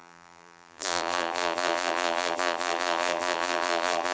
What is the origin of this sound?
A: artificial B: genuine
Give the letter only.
A